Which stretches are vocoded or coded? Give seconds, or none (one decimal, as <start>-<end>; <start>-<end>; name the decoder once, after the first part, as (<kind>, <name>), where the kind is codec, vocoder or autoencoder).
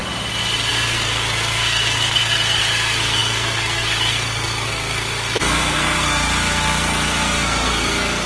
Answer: 0.7-8.3 (codec, SNAC)